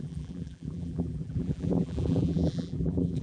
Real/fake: fake